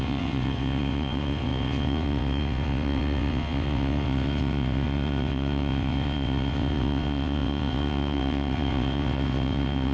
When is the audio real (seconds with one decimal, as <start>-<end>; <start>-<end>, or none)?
none